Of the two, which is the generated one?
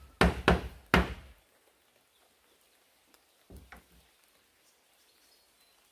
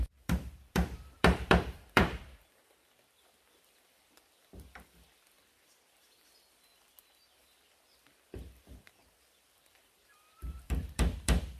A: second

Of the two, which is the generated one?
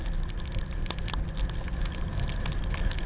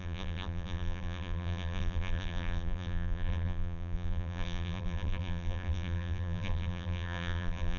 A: second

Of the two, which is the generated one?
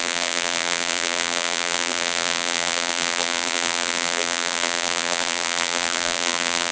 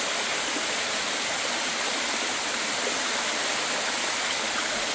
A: first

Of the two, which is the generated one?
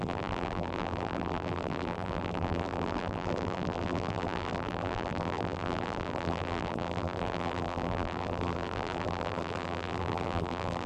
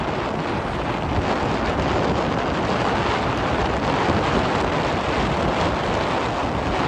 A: first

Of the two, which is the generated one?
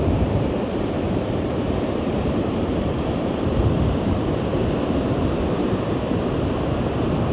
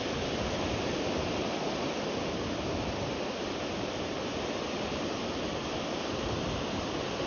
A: first